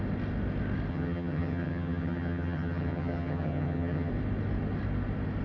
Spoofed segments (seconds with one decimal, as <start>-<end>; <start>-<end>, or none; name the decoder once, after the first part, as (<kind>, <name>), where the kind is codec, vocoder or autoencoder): 0.9-4.1 (vocoder, HiFi-GAN)

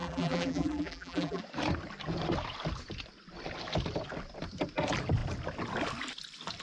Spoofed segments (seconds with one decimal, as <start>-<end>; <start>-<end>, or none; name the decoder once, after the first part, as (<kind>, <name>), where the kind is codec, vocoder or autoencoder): 0.0-1.4 (vocoder, BigVGAN v2)

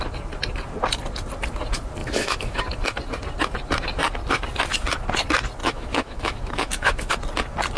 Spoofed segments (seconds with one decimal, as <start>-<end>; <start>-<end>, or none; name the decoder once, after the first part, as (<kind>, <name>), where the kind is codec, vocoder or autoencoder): 2.0-2.6 (autoencoder, DAC-VAE); 5.6-7.1

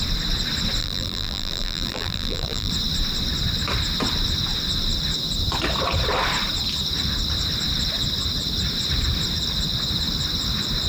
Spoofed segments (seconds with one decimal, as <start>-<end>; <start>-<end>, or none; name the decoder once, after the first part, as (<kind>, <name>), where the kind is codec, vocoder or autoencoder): 0.8-2.7 (vocoder, BigVGAN v2)

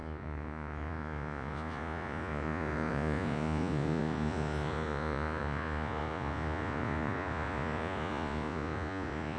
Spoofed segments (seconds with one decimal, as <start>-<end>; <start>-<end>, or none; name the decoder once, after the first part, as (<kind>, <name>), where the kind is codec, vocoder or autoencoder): 0.0-9.4 (vocoder, Vocos)